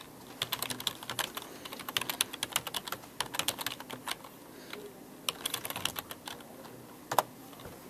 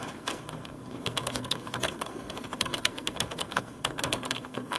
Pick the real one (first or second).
first